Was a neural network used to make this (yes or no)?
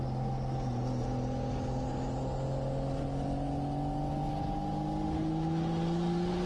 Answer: no